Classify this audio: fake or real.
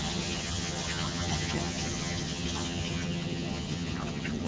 fake